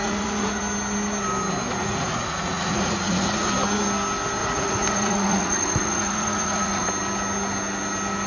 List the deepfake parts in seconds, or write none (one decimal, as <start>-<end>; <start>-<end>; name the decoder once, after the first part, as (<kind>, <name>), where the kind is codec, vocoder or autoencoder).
0.0-0.6 (vocoder, Vocos); 1.8-3.5; 4.4-6.9